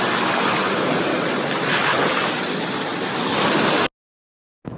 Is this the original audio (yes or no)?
yes